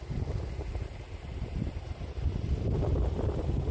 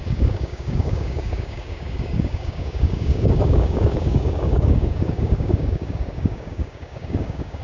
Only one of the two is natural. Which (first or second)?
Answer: first